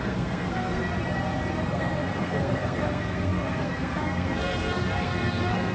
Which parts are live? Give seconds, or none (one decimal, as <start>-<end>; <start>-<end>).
0.8-1.5